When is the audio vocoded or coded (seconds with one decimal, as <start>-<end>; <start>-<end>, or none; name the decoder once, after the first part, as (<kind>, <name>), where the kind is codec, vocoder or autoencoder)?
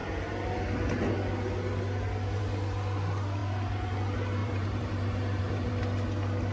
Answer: 4.4-5.7 (vocoder, BigVGAN v2)